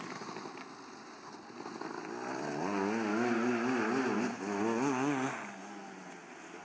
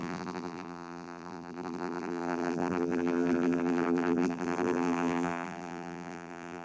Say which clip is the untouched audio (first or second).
first